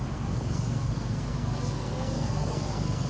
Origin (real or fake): fake